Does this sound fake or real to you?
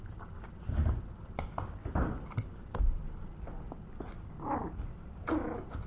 real